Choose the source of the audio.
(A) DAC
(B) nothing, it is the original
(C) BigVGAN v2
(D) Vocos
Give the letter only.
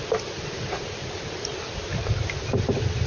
C